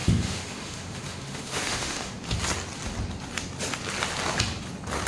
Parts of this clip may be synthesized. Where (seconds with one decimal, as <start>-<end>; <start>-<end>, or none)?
0.0-2.2